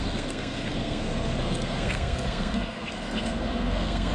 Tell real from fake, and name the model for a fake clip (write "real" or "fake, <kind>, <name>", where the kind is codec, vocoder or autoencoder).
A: fake, codec, SNAC